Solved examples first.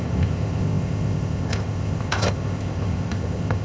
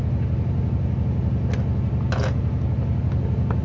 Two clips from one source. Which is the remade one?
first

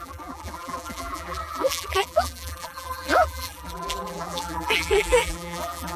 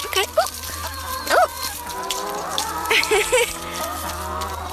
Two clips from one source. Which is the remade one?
first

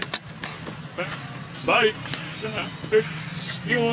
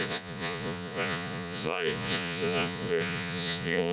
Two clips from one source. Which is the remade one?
second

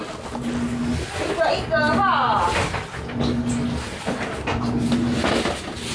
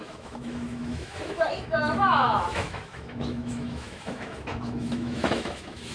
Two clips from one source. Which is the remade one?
second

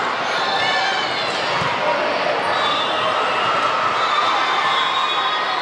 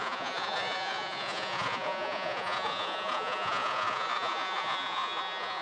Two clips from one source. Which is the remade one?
second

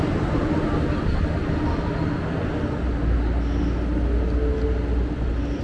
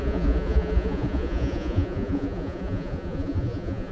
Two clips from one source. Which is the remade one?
second